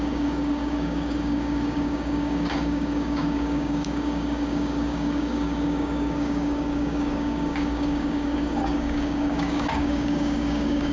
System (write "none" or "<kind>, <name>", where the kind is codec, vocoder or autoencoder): codec, DAC